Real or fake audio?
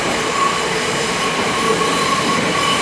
fake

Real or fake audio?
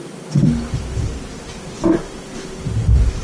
fake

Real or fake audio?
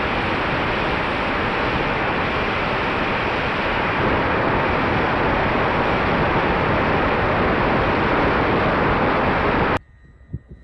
fake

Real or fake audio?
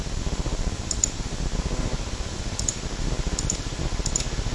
real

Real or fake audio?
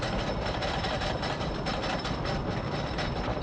real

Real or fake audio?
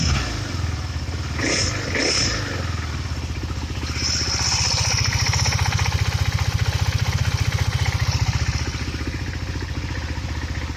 real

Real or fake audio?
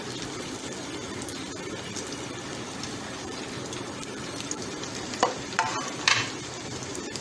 fake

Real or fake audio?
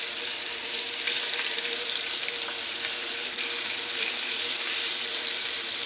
fake